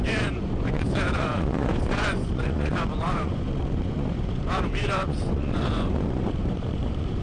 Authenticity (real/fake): fake